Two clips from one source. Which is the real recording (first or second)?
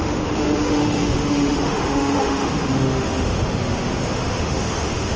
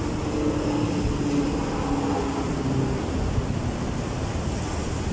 second